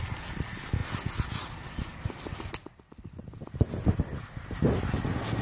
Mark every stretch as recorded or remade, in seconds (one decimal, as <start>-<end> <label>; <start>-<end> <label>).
0.0-5.4 recorded